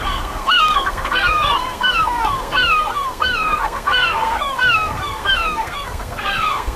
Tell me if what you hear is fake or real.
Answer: fake